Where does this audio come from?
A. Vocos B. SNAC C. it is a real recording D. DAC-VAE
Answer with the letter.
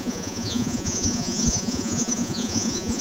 A